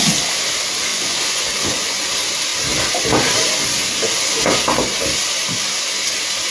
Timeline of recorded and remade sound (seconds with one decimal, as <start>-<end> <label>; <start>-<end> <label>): 0.0-0.9 recorded; 0.9-2.0 remade; 2.0-6.5 recorded